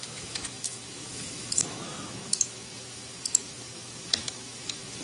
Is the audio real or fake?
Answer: fake